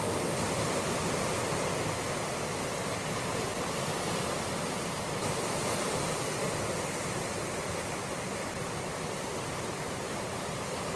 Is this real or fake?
real